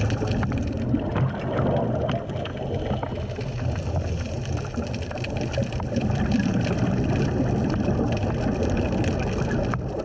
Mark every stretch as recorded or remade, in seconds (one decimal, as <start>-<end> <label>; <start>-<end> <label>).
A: 0.0-10.0 recorded